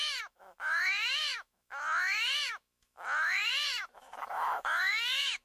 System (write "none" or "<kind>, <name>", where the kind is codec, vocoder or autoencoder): autoencoder, DAC-VAE